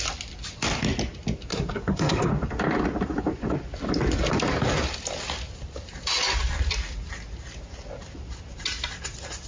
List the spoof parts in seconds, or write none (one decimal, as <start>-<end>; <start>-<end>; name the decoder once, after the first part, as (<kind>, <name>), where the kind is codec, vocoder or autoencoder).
1.5-2.3 (codec, SNAC)